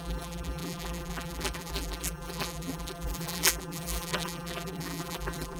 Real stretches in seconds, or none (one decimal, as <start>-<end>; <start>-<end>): none

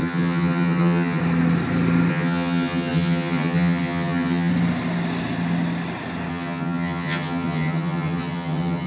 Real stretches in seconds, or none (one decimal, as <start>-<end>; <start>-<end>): 1.2-2.1; 4.5-6.3